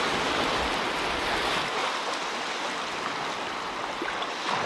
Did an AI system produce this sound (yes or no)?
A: yes